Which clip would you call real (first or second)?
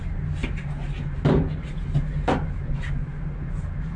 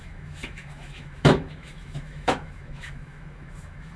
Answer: first